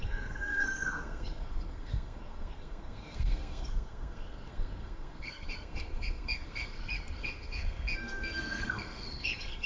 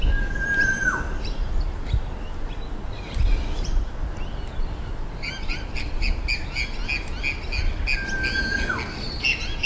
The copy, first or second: first